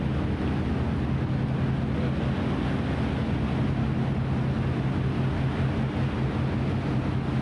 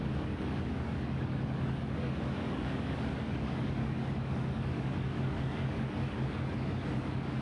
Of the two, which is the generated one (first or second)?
second